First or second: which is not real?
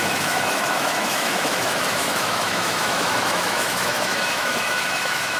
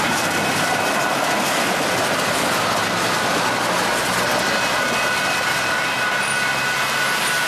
first